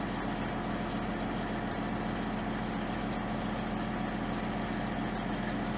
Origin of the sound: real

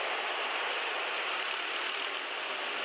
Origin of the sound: real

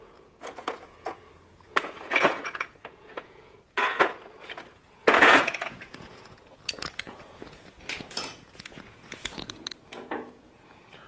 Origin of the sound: fake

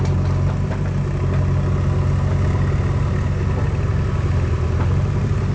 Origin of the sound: real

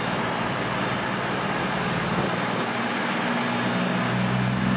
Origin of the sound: real